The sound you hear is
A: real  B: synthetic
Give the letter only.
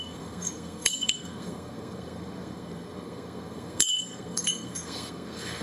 B